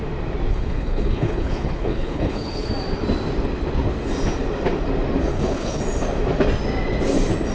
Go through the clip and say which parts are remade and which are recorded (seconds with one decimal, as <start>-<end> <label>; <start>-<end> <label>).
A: 0.0-0.5 recorded; 0.5-2.7 remade; 2.7-5.3 recorded; 5.3-5.8 remade; 5.8-7.5 recorded